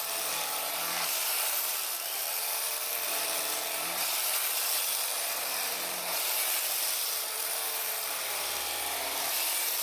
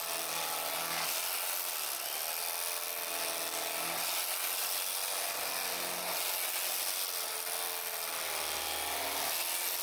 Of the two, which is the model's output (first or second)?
first